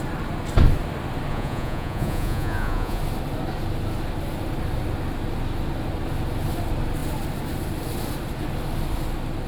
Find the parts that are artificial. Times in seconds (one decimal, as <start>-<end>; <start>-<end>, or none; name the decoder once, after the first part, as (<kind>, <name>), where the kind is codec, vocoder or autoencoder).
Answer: 1.3-3.0 (vocoder, Vocos)